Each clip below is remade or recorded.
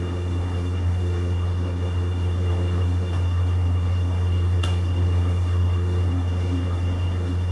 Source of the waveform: remade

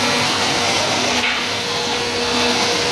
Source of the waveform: remade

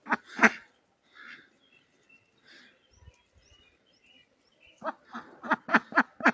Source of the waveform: recorded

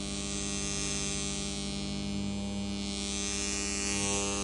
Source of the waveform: recorded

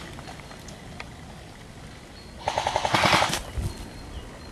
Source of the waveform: recorded